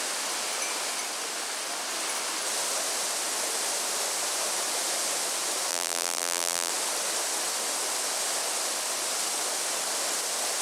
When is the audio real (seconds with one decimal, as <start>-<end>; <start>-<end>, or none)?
0.0-5.7; 6.7-10.6